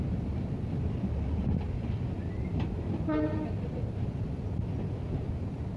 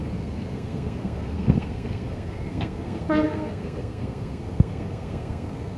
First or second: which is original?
first